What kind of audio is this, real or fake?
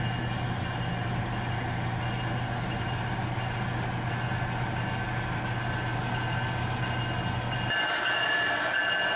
real